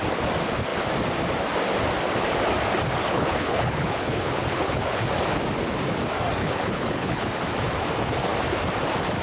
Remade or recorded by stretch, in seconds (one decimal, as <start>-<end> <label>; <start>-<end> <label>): 0.0-3.1 recorded; 3.1-5.0 remade; 5.0-6.4 recorded; 6.4-7.3 remade; 7.3-9.2 recorded